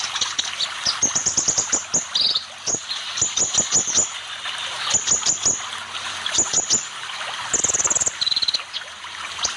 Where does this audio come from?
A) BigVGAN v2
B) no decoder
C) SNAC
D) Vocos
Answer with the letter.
B